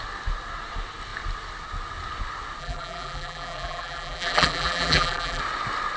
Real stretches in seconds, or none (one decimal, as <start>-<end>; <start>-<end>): 0.0-2.6; 5.4-6.0